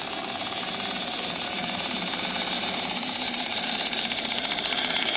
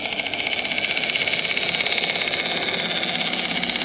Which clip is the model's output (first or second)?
first